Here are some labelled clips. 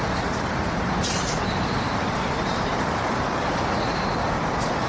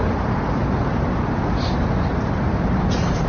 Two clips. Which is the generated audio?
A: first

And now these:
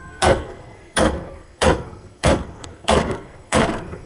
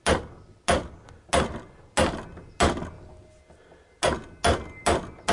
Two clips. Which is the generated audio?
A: first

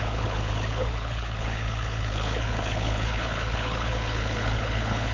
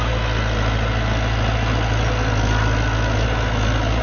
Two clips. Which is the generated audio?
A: first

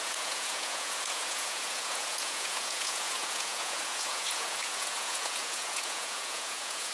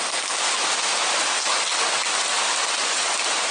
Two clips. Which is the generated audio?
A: first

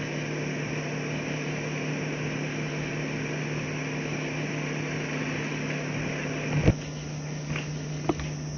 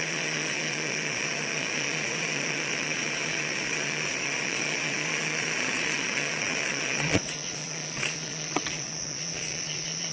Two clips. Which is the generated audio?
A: second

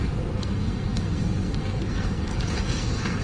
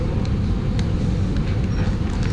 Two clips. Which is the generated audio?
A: first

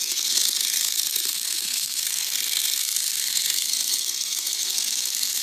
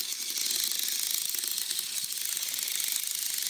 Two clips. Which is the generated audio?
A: first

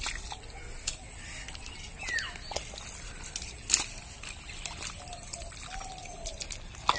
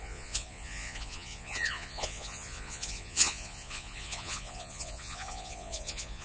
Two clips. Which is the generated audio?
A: second